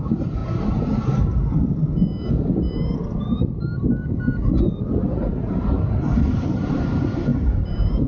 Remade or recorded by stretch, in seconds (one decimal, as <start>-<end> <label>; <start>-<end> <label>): 0.0-0.4 remade; 0.4-5.3 recorded; 5.3-8.1 remade